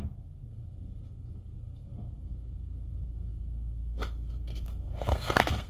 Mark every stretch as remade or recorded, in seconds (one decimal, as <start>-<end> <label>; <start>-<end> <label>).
0.0-5.7 remade